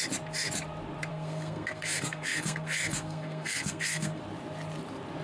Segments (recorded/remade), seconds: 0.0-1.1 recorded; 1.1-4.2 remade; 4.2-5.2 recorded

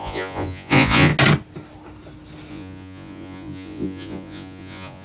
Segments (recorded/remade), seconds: 0.0-1.1 remade; 1.1-2.5 recorded; 2.5-5.0 remade

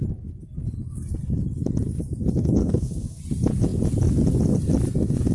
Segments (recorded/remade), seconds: 0.0-2.6 recorded; 2.6-3.2 remade; 3.2-5.3 recorded

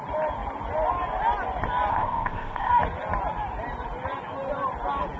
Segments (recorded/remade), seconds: 0.0-1.9 recorded; 1.9-2.7 remade; 2.7-5.2 recorded

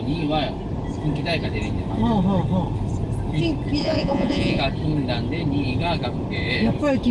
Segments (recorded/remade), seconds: 0.0-3.8 recorded; 3.8-4.6 remade; 4.6-7.1 recorded